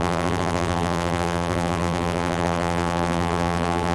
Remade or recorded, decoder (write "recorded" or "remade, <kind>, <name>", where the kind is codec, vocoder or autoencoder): remade, vocoder, BigVGAN v2